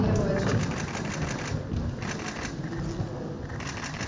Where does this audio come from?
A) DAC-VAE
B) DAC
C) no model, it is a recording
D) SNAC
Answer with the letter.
C